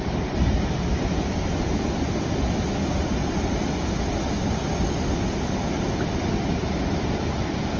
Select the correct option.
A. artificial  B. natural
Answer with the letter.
B